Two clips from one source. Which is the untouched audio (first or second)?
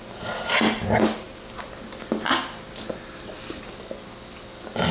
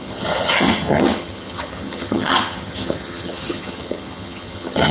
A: first